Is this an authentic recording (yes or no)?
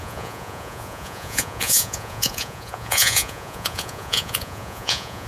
no